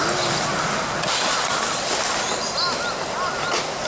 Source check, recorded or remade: recorded